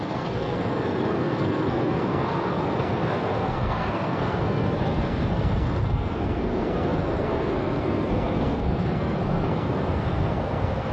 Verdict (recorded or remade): remade